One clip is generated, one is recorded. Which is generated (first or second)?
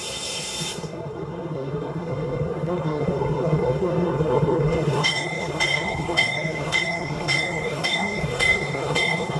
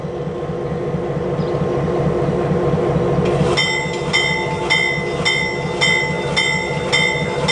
first